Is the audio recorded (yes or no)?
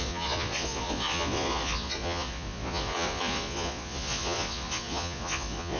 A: no